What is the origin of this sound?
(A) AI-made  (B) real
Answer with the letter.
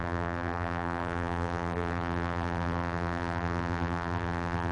A